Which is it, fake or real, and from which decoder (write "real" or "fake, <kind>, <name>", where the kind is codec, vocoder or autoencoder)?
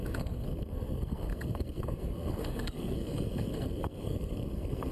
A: fake, codec, SNAC